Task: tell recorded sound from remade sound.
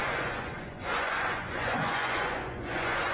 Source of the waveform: remade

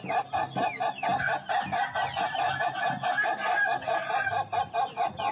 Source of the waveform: recorded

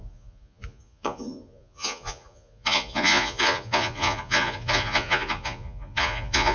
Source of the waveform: remade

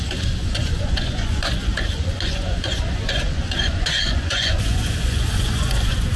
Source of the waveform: remade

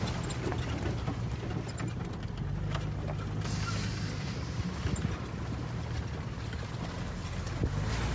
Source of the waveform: recorded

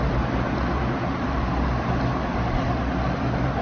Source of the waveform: recorded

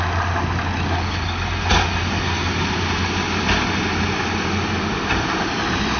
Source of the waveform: recorded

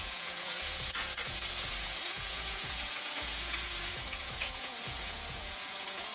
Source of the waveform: remade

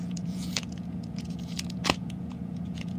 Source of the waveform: remade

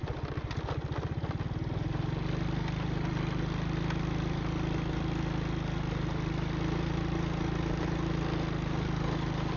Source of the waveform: recorded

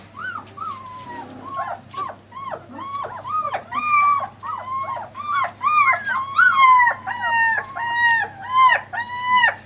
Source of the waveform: recorded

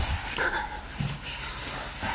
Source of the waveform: recorded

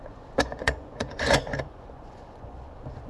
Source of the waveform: remade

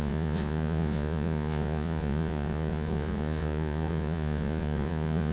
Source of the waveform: remade